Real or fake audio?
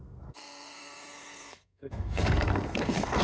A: fake